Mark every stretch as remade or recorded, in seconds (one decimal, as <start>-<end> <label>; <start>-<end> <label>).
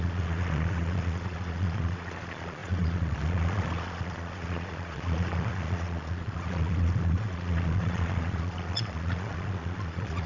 0.0-10.3 remade